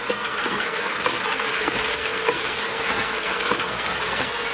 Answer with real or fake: fake